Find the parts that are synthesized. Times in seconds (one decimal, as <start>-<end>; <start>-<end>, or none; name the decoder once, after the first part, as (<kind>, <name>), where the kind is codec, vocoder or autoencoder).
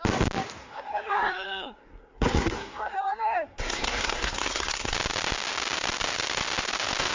0.6-4.9 (codec, SNAC)